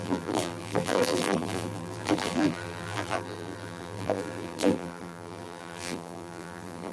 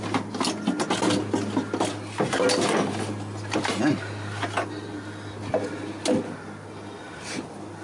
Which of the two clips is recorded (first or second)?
second